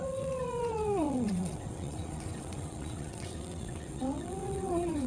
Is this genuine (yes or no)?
no